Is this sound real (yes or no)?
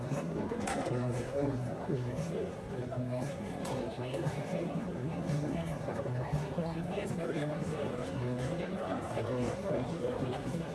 no